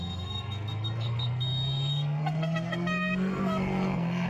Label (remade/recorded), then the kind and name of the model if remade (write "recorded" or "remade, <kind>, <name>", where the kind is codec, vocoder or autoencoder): remade, codec, SNAC